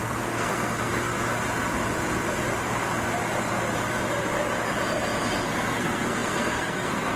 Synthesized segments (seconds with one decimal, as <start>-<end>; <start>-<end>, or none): 0.0-1.1; 5.4-7.2